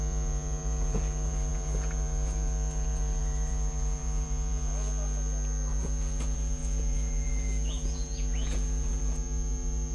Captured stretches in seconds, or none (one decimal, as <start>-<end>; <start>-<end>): 4.7-5.7